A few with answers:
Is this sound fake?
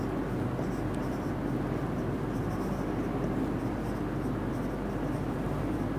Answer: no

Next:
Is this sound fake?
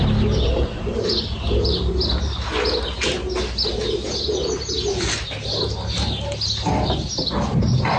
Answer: no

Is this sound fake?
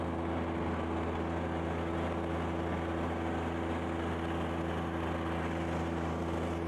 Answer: no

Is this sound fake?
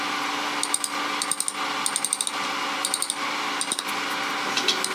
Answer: no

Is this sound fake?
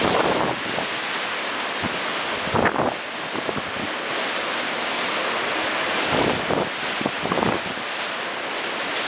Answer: no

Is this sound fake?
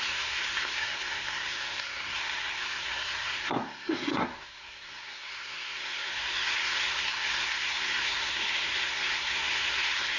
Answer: yes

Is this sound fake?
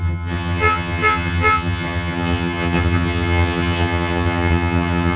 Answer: yes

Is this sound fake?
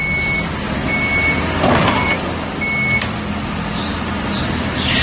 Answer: no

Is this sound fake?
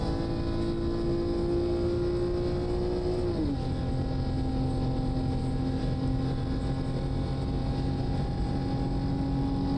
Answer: no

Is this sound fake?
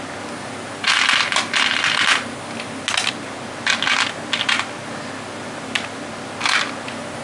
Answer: no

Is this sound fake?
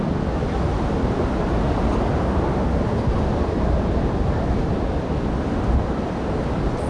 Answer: no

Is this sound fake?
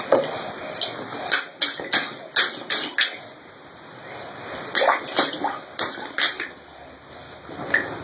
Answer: no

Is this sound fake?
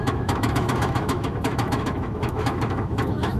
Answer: yes